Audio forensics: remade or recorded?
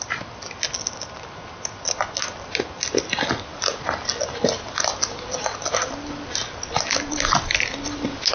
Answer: recorded